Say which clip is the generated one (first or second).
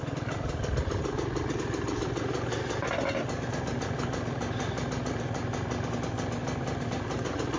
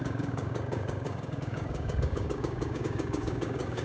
second